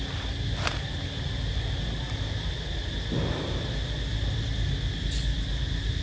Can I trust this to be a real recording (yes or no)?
yes